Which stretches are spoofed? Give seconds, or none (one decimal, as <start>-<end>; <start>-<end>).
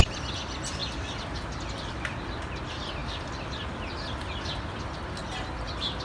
none